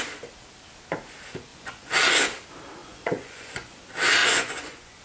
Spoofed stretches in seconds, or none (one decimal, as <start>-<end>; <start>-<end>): 1.5-2.1; 2.8-3.8; 4.2-5.0